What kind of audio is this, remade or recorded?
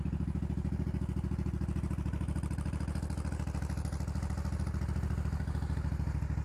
recorded